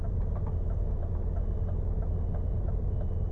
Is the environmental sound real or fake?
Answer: real